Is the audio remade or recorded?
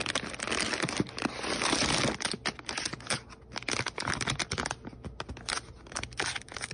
recorded